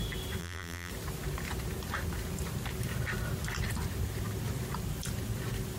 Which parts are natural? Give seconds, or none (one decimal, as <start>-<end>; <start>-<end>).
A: 0.0-0.4; 0.9-5.8